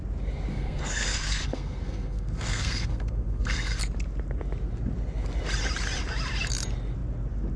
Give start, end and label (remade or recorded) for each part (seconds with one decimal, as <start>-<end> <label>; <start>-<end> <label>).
0.0-0.5 recorded; 0.5-3.8 remade; 3.8-7.6 recorded